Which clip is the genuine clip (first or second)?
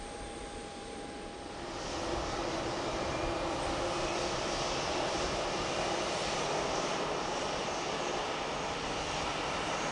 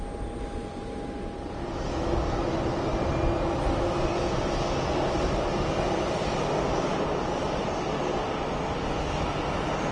second